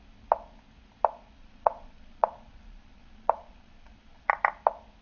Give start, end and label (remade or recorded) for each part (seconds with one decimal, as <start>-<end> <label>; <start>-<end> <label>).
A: 0.0-1.4 recorded; 1.4-4.4 remade; 4.4-5.0 recorded